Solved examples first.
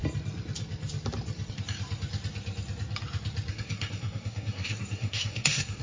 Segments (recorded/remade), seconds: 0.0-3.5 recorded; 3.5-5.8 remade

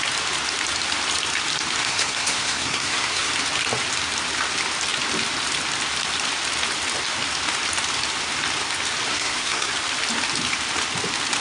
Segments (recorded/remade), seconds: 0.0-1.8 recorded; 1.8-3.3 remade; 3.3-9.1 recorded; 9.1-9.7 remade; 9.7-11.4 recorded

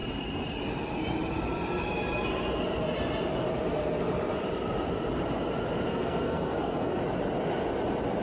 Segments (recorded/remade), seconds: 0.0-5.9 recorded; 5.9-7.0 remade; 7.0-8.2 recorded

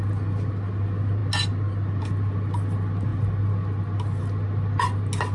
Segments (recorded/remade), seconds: 0.0-5.3 recorded

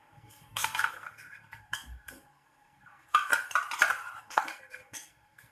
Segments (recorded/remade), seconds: 0.0-3.3 remade; 3.3-4.2 recorded; 4.2-5.5 remade